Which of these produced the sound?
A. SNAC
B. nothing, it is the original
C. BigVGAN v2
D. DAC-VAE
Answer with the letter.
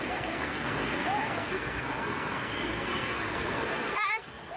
A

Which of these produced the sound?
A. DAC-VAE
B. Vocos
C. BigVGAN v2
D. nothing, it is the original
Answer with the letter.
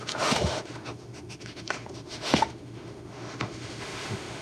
A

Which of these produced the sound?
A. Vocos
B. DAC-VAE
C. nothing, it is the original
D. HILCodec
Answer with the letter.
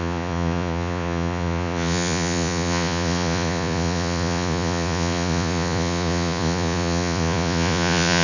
A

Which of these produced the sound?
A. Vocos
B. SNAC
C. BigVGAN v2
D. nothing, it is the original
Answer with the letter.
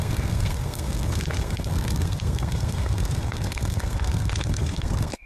B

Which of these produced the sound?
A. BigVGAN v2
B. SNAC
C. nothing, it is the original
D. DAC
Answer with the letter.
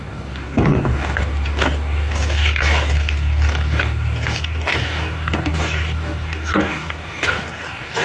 D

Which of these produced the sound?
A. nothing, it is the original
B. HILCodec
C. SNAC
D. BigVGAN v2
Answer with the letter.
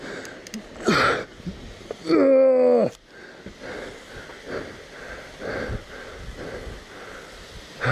A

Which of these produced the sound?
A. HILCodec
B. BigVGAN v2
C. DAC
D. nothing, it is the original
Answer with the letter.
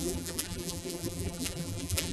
B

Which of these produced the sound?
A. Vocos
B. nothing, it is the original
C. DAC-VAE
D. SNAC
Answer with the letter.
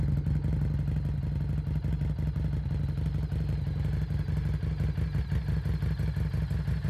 B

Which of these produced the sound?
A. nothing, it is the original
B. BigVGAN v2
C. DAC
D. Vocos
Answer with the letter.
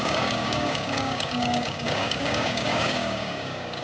C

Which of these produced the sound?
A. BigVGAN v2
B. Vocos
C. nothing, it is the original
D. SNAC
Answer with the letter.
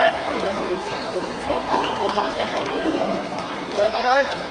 D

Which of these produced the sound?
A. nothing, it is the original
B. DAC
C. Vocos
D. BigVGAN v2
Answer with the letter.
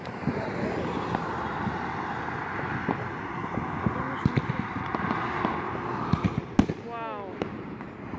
A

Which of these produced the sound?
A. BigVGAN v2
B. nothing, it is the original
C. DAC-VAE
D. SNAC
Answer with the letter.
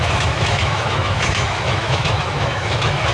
C